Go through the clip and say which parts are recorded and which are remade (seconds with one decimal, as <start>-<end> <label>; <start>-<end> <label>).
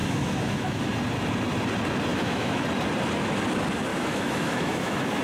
0.0-0.8 remade; 0.8-2.1 recorded; 2.1-2.6 remade; 2.6-3.9 recorded; 3.9-5.2 remade